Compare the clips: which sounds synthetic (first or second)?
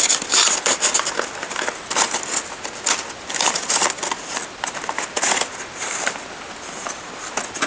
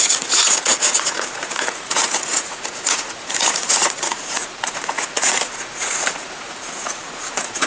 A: second